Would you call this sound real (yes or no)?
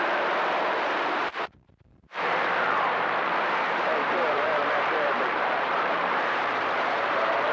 no